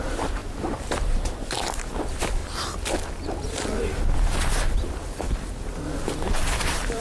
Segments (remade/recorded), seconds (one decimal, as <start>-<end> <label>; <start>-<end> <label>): 0.0-2.4 remade; 2.4-6.6 recorded; 6.6-7.0 remade